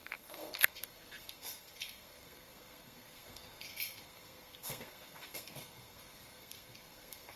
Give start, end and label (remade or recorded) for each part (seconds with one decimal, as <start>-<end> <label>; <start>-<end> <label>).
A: 0.0-7.4 remade